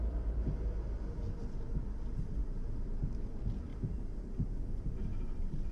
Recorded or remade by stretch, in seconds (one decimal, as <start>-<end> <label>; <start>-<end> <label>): 0.0-2.4 recorded; 2.4-3.0 remade; 3.0-3.7 recorded; 3.7-5.7 remade

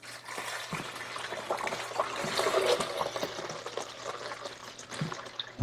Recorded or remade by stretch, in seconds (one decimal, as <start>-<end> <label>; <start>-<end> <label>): 0.0-5.6 recorded

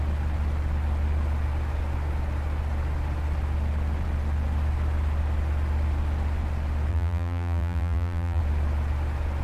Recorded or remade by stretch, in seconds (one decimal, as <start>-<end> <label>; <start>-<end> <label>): 0.0-6.9 recorded; 6.9-8.4 remade; 8.4-9.4 recorded

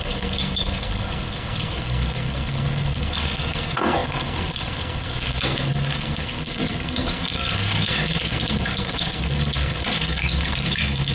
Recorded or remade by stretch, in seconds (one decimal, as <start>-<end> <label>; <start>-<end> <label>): 0.0-11.1 remade

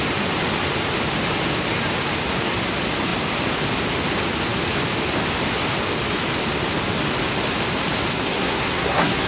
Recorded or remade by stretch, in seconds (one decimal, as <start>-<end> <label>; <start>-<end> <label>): 0.0-8.1 recorded; 8.1-9.3 remade